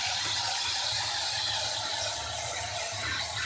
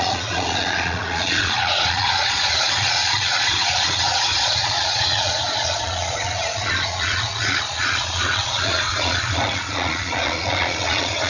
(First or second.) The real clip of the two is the first